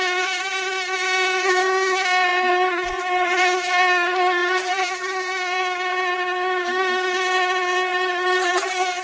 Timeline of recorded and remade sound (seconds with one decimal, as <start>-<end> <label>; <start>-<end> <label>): 0.0-7.9 recorded; 7.9-8.5 remade; 8.5-9.0 recorded